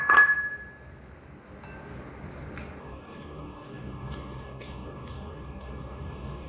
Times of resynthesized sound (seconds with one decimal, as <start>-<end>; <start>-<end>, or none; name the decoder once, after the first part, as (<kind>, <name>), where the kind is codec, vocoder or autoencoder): 2.8-6.5 (codec, DAC)